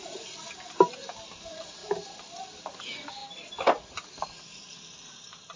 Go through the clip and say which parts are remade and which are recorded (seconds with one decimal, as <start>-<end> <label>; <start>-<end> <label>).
0.0-5.6 recorded